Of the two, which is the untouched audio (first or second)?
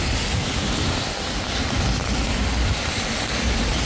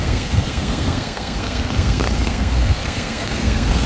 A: first